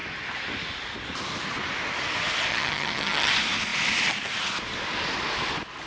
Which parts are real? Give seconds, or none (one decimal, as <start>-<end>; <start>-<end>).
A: 0.0-2.5; 3.3-5.9